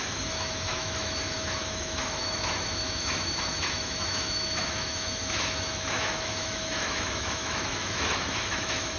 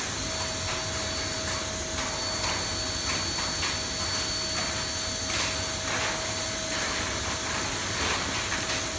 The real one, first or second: second